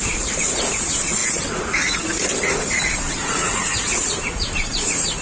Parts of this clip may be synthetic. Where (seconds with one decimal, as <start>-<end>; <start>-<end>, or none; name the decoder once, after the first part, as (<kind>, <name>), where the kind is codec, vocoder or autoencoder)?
0.0-5.2 (vocoder, Vocos)